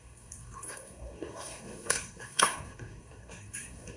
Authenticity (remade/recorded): remade